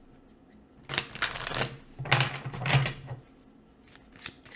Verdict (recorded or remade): recorded